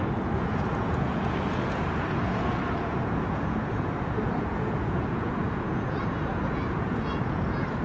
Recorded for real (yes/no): no